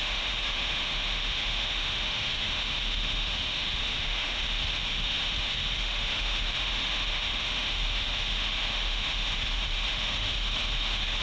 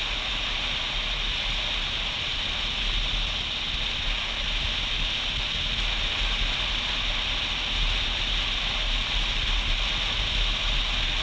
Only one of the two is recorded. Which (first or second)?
second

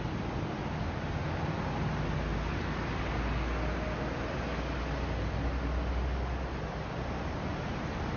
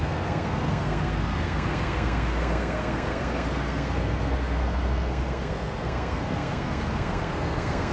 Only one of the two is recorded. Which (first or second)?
first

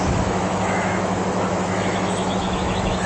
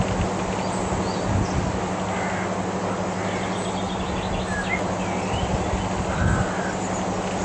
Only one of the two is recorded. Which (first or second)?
second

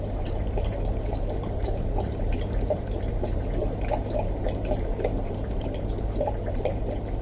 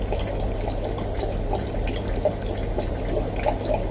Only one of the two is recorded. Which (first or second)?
second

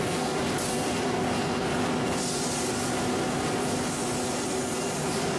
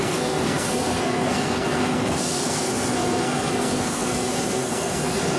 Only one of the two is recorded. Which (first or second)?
first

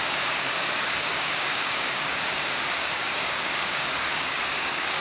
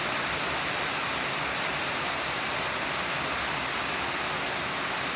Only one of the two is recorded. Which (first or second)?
second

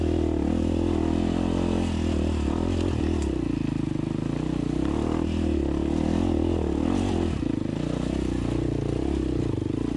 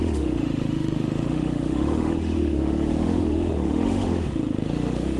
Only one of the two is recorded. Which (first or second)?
first